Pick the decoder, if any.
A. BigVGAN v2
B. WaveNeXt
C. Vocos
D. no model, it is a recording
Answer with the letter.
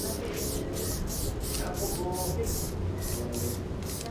D